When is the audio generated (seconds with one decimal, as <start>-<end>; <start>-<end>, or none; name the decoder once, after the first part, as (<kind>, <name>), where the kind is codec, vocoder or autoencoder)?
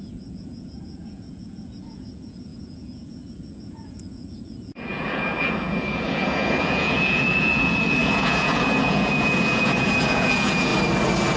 0.0-10.7 (vocoder, Vocos)